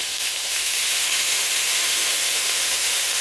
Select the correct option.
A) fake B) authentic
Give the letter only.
A